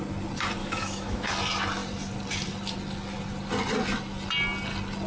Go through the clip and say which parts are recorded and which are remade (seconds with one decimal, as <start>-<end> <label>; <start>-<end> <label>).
0.0-0.6 recorded; 0.6-1.3 remade; 1.3-5.1 recorded